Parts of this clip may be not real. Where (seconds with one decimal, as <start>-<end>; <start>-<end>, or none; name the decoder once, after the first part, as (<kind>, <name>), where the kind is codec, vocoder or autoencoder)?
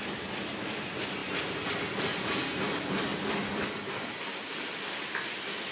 none